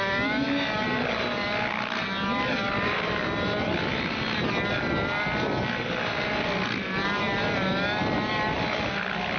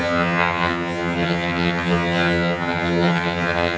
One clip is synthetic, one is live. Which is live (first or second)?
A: first